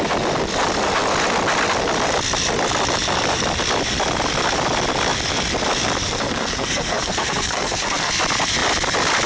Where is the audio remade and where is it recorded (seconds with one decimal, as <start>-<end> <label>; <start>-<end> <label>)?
0.0-6.0 recorded; 6.0-8.1 remade; 8.1-9.3 recorded